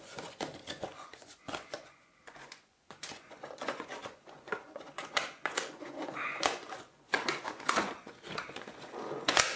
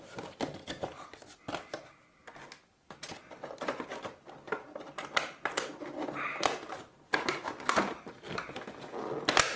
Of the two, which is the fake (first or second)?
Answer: first